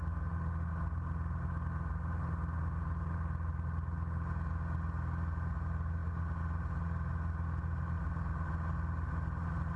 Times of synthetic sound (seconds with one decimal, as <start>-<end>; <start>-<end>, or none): none